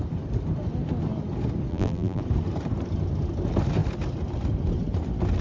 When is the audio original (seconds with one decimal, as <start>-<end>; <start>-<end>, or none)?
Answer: 0.0-1.7; 2.2-5.4